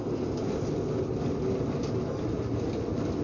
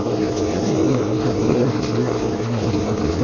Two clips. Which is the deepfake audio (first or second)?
second